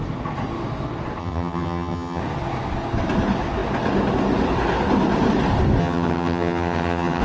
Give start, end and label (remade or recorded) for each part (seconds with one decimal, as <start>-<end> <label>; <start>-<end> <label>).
0.0-1.2 recorded; 1.2-2.2 remade; 2.2-5.8 recorded; 5.8-7.2 remade